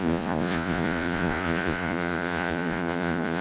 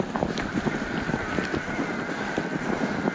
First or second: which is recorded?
second